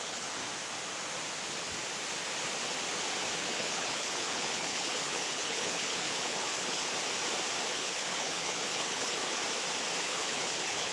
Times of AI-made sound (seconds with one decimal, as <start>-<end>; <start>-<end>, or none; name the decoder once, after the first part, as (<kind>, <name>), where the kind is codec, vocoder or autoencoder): 0.0-0.4 (codec, HILCodec); 3.2-6.8; 7.7-9.4; 10.0-10.9

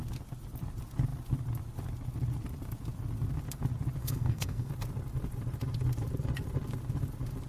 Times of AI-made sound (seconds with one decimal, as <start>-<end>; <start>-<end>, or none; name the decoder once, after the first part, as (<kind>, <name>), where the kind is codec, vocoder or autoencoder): 4.0-4.7 (codec, SNAC)

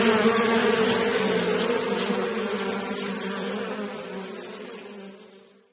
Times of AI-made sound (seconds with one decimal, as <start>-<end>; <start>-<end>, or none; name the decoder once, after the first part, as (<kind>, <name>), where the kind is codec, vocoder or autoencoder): none

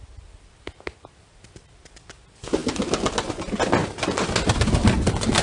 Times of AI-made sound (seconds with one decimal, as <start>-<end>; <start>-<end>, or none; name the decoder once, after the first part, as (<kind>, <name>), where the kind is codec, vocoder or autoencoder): none